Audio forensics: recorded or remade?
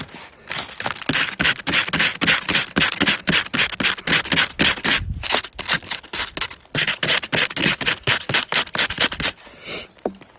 recorded